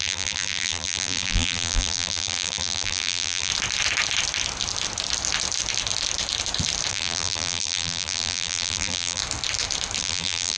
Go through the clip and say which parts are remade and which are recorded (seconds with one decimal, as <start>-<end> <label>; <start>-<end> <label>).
0.0-3.5 remade; 3.5-6.9 recorded; 6.9-9.2 remade; 9.2-10.0 recorded; 10.0-10.6 remade